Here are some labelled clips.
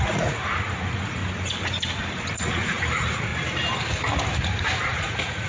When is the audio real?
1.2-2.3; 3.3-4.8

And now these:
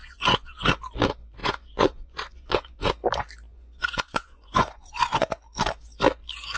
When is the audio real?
0.7-1.4; 2.9-3.5; 5.3-6.6

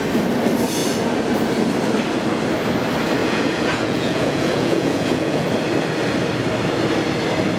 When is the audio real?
0.0-3.2; 5.5-7.6

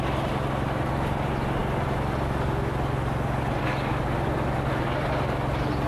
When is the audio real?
0.0-5.9

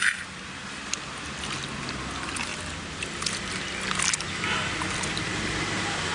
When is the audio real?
0.0-6.1

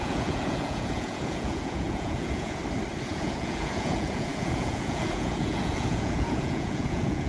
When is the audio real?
2.6-3.1